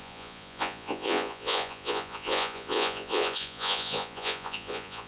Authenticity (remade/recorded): remade